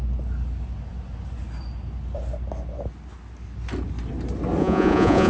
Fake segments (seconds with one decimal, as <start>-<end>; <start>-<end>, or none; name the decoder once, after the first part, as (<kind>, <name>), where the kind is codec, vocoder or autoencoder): 4.6-5.3 (vocoder, Vocos)

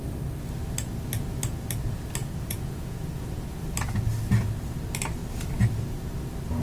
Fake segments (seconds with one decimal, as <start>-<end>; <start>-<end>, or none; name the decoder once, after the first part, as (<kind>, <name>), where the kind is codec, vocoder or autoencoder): 2.2-3.4 (vocoder, Vocos)

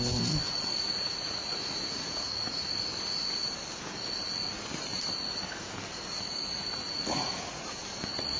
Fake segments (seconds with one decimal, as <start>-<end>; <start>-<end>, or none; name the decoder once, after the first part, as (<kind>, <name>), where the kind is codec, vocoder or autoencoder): 0.4-2.6 (vocoder, Vocos); 6.3-7.8